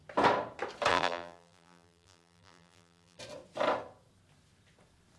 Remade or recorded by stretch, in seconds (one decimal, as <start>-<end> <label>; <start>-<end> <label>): 0.0-0.9 recorded; 0.9-3.2 remade; 3.2-5.2 recorded